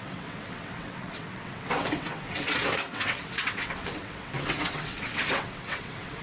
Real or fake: fake